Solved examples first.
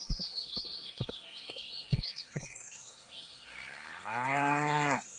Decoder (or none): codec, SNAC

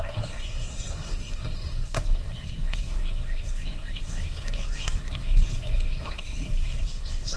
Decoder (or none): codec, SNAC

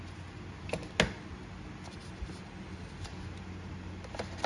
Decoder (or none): none